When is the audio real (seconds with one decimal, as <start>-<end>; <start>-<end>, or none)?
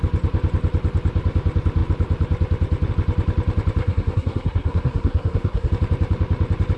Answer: 0.0-3.8; 5.7-6.8